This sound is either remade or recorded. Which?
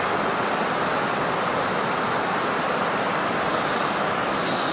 recorded